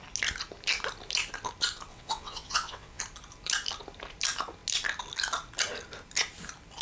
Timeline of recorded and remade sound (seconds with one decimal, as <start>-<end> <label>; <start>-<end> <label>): 0.0-1.9 recorded; 1.9-3.0 remade; 3.0-6.8 recorded